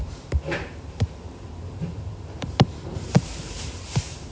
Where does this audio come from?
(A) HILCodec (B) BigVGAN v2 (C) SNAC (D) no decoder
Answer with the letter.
B